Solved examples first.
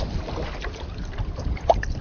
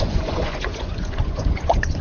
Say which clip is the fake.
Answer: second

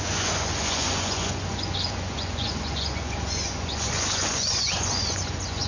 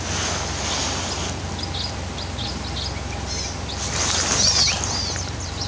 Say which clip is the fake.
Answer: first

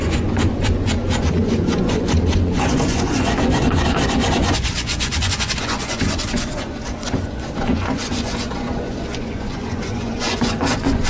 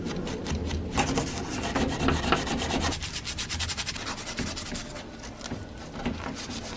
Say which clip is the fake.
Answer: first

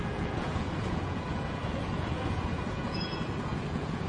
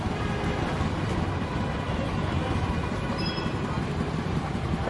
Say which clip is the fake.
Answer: first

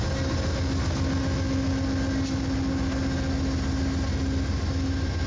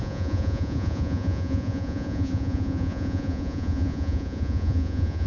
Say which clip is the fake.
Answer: second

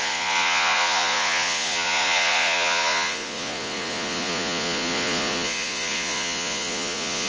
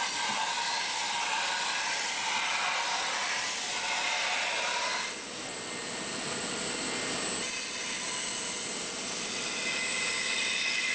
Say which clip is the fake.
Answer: first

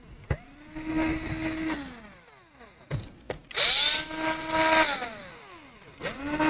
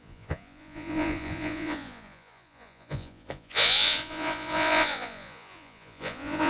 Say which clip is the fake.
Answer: second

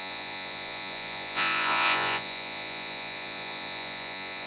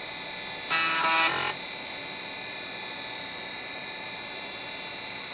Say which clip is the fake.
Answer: first